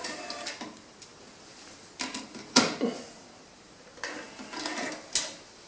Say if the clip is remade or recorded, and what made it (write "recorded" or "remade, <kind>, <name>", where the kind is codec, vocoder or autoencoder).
recorded